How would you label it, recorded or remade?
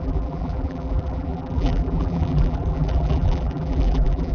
remade